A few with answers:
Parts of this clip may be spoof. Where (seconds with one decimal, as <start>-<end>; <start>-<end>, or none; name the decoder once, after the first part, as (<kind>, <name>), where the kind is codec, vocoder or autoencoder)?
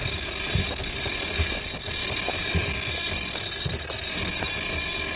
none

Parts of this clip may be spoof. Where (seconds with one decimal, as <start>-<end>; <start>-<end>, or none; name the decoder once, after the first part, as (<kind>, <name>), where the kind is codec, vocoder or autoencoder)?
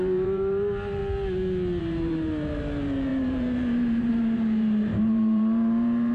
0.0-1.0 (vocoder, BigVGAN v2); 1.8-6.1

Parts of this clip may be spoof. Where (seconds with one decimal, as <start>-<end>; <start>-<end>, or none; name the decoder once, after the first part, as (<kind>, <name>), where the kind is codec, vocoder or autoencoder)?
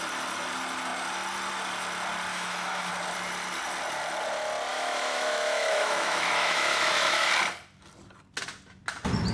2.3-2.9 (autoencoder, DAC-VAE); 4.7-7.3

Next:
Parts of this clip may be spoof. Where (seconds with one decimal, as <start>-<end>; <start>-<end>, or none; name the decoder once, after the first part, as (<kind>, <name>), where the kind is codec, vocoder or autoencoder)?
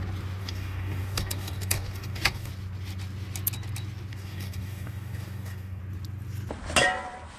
0.4-2.5 (codec, DAC); 4.1-5.8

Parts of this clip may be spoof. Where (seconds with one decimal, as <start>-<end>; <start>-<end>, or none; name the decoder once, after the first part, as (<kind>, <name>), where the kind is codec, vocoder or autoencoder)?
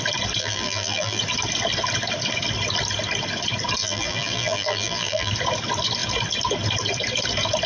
0.4-1.2 (vocoder, BigVGAN v2); 3.8-5.3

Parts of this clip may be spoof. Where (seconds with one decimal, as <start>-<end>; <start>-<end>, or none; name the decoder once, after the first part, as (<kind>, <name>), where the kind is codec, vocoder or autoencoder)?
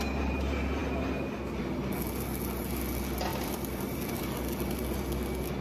3.3-4.2 (vocoder, BigVGAN v2)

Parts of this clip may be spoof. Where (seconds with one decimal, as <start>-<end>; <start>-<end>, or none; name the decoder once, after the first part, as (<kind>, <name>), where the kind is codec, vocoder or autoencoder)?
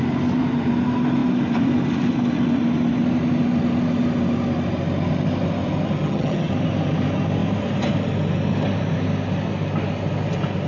6.0-6.5 (vocoder, HiFi-GAN)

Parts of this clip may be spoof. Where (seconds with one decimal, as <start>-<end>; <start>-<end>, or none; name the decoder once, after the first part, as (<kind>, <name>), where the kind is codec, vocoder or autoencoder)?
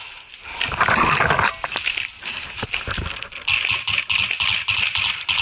none